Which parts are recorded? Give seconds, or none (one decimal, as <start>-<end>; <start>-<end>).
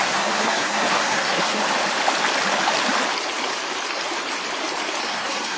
1.6-5.0